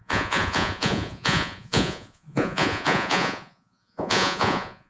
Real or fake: fake